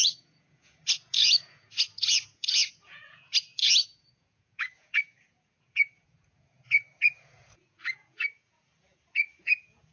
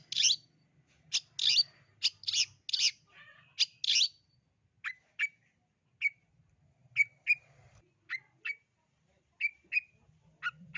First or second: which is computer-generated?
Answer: first